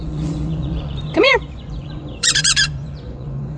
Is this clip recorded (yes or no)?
no